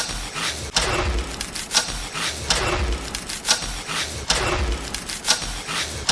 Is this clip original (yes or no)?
yes